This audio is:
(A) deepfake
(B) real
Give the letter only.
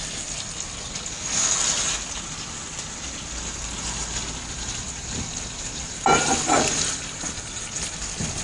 B